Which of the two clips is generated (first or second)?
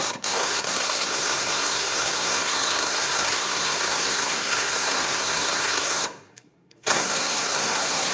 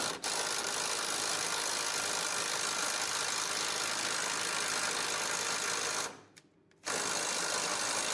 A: first